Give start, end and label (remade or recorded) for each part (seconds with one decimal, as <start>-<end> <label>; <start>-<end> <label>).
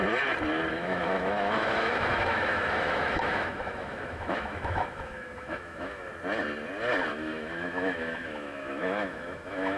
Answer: 0.0-0.7 recorded; 0.7-6.1 remade; 6.1-7.1 recorded; 7.1-9.8 remade